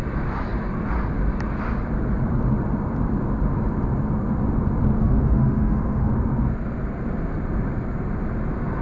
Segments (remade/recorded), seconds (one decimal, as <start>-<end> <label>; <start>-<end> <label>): 0.0-5.0 recorded; 5.0-6.1 remade; 6.1-8.8 recorded